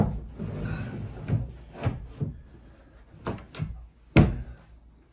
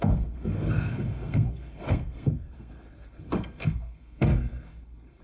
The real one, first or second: first